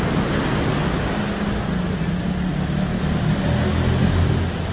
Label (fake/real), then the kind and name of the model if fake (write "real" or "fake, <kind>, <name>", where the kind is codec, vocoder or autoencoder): real